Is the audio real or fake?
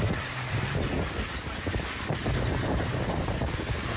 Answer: fake